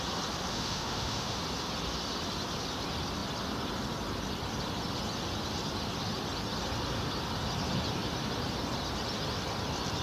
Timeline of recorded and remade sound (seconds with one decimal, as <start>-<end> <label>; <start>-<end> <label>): 0.0-0.5 recorded; 0.5-1.4 remade; 1.4-10.0 recorded